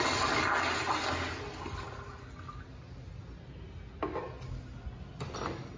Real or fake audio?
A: real